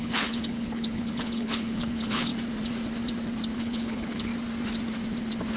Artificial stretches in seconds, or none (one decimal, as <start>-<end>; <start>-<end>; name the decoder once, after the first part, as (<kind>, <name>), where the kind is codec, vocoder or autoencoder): 0.0-2.3 (codec, HILCodec); 3.6-4.3